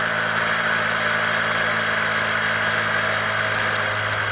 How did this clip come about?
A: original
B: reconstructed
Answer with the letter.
A